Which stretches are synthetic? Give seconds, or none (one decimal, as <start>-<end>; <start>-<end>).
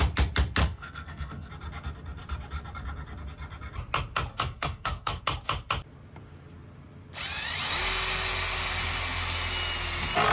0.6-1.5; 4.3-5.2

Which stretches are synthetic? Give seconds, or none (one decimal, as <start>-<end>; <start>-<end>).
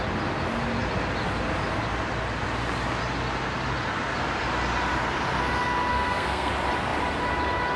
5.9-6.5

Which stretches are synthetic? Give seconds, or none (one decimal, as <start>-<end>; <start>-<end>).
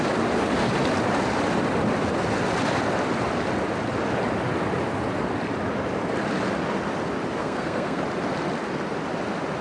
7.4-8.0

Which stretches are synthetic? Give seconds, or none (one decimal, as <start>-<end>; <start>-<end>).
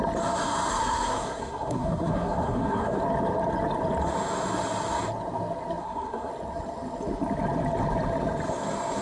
0.7-3.0; 5.8-6.3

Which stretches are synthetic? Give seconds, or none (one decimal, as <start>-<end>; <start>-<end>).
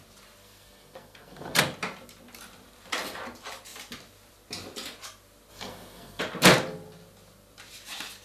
0.4-1.6; 5.5-6.2